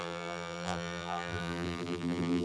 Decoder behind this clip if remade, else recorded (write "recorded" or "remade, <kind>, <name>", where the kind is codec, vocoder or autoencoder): remade, vocoder, BigVGAN v2